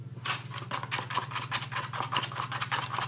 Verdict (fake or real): real